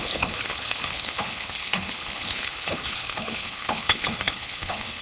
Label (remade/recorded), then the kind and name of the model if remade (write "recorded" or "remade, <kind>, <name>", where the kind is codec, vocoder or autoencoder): remade, codec, HILCodec